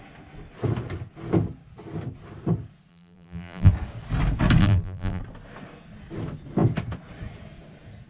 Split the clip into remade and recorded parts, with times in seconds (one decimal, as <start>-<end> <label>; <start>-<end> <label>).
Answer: 0.0-2.9 recorded; 2.9-3.7 remade; 3.7-4.6 recorded; 4.6-5.2 remade; 5.2-8.1 recorded

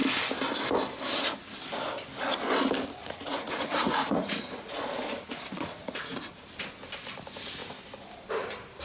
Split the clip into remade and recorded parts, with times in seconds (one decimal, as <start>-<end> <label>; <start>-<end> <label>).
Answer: 0.0-3.0 recorded; 3.0-6.4 remade; 6.4-8.8 recorded

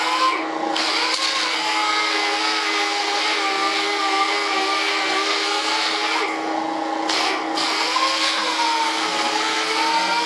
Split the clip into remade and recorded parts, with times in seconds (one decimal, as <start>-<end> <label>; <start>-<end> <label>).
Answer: 0.0-0.9 remade; 0.9-1.5 recorded; 1.5-10.3 remade

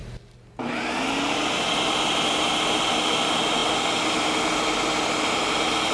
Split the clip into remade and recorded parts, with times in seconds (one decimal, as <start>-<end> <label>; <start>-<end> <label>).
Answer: 0.0-5.9 recorded